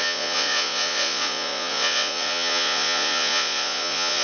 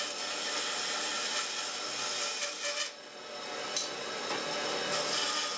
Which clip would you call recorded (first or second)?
second